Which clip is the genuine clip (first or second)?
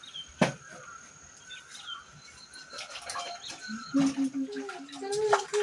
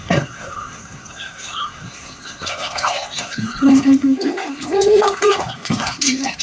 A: first